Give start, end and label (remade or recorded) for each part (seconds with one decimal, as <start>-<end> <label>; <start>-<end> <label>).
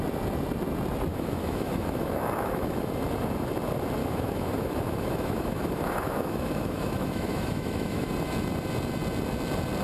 0.0-1.1 recorded; 1.1-2.9 remade; 2.9-4.0 recorded; 4.0-8.1 remade; 8.1-9.8 recorded